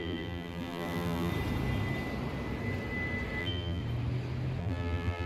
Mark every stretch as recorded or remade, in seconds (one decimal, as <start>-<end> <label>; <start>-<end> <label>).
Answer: 0.0-1.3 remade; 1.3-3.4 recorded; 3.4-3.8 remade; 3.8-4.6 recorded; 4.6-5.3 remade